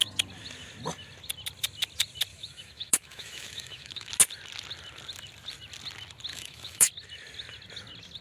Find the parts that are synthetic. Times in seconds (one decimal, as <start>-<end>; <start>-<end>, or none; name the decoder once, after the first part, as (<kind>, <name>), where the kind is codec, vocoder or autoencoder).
2.3-4.1 (autoencoder, DAC-VAE); 6.3-6.9